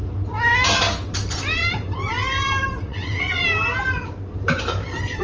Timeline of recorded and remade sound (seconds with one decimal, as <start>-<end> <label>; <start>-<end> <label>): 0.0-2.8 recorded; 2.8-3.4 remade; 3.4-5.2 recorded